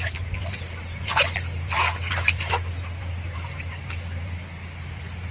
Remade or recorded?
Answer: recorded